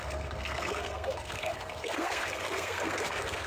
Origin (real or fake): fake